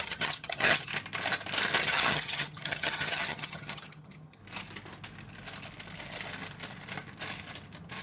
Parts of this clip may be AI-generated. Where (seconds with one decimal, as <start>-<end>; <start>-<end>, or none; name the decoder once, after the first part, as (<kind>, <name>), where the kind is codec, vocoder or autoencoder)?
0.0-0.9 (vocoder, HiFi-GAN); 1.8-4.4